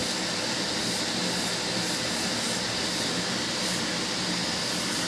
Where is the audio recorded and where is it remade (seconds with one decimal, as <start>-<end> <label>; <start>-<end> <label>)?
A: 0.0-5.1 recorded

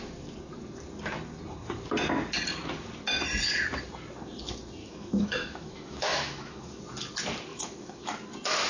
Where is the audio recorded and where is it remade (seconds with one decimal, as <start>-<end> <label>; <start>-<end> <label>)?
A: 0.0-4.8 recorded; 4.8-6.8 remade; 6.8-7.5 recorded; 7.5-8.1 remade; 8.1-8.7 recorded

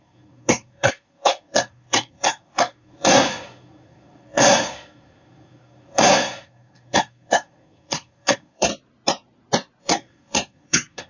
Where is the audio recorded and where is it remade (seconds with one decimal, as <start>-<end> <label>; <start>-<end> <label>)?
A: 0.0-8.7 remade; 8.7-9.8 recorded; 9.8-11.1 remade

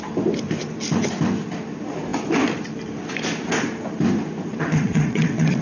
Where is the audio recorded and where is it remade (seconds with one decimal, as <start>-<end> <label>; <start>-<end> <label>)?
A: 0.0-4.5 recorded; 4.5-5.6 remade

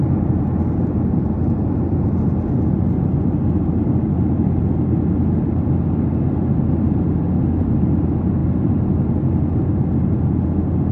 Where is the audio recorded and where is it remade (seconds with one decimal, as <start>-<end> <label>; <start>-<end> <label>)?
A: 0.0-10.9 recorded